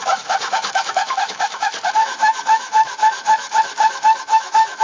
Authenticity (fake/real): fake